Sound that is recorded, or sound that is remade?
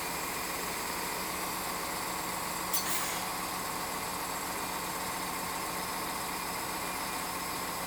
recorded